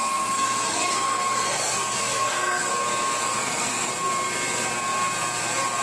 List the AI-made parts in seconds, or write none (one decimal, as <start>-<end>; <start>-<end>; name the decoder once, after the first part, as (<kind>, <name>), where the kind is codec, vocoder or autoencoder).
0.0-2.7 (codec, SNAC); 3.2-3.9

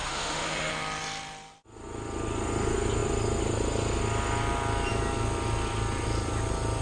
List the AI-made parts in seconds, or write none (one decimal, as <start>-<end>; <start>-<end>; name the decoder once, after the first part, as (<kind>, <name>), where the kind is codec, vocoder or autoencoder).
0.0-0.7 (autoencoder, DAC-VAE)

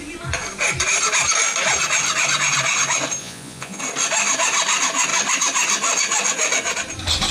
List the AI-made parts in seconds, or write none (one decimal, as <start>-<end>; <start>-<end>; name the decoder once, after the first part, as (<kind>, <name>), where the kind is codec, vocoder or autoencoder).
3.2-3.8 (vocoder, Vocos)

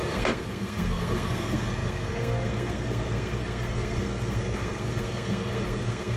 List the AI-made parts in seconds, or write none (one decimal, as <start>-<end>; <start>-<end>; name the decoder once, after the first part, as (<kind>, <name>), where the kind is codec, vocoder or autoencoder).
0.0-6.2 (codec, SNAC)

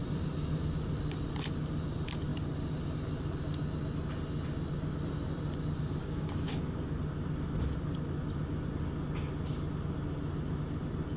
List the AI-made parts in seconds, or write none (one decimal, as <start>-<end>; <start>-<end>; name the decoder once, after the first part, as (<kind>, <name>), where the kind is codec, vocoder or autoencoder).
6.0-6.9 (codec, DAC)

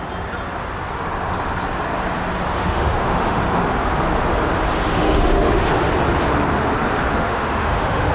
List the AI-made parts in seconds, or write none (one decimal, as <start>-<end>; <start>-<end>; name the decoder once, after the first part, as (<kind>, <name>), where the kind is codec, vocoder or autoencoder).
2.6-3.4 (autoencoder, DAC-VAE); 4.9-5.7; 7.1-8.1